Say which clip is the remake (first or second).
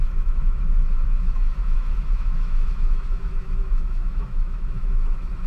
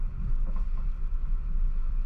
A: first